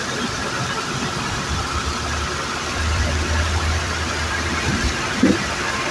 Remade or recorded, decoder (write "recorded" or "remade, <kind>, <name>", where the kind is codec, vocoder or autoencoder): remade, vocoder, BigVGAN v2